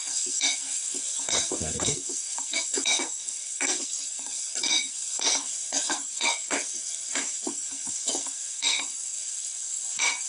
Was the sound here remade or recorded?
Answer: remade